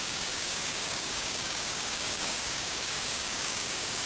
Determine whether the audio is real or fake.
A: fake